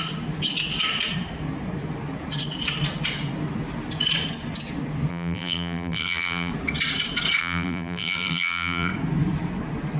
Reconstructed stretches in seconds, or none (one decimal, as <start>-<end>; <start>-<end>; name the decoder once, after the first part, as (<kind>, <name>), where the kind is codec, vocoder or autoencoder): 5.1-6.5 (vocoder, BigVGAN v2); 7.4-8.9

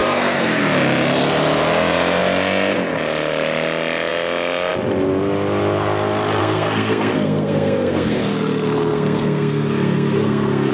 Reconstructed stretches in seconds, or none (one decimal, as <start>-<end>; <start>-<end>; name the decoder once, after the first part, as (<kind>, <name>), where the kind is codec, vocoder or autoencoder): 0.0-0.6 (codec, SNAC); 6.4-10.7

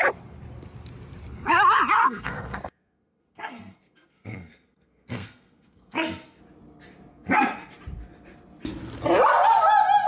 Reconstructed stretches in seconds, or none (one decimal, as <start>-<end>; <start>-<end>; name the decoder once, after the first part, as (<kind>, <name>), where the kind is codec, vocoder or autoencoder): 2.0-6.4 (codec, SNAC); 7.1-7.7

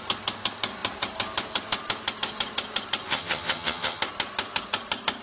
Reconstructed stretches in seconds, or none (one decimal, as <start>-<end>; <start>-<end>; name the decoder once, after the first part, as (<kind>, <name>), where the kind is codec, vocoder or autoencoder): 3.1-4.0 (vocoder, HiFi-GAN)

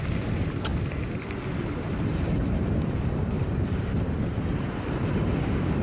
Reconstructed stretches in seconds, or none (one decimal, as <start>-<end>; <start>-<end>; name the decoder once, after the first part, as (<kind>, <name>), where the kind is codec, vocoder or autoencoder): 2.1-5.8 (vocoder, BigVGAN v2)

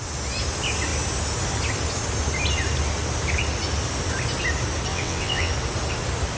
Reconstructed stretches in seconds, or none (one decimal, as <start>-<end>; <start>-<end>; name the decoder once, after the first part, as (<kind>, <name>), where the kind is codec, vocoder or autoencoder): 4.9-5.5 (vocoder, WaveNeXt)